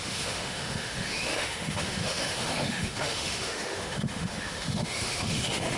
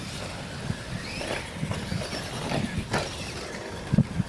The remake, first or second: first